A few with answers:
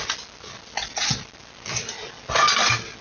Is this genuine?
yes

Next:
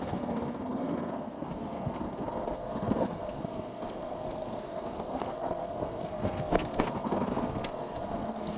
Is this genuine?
no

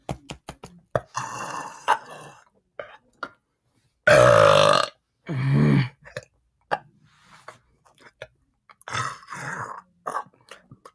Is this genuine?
yes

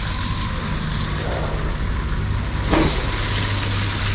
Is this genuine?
yes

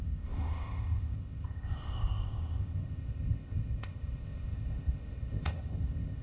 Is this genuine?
no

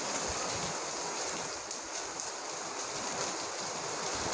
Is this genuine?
no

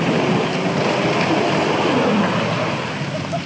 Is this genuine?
yes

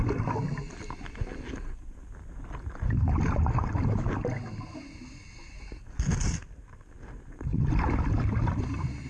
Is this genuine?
yes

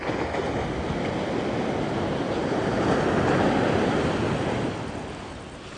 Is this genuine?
yes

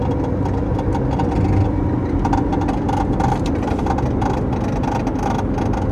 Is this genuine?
yes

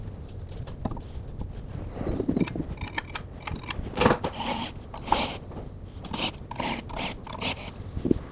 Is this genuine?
yes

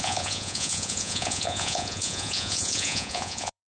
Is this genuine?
no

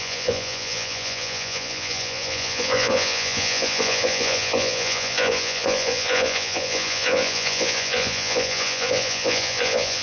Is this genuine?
no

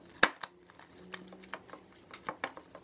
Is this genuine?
yes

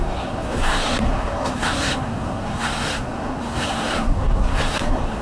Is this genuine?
no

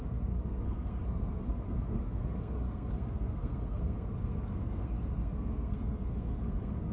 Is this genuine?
no